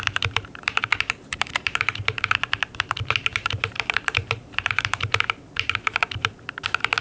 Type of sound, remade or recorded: remade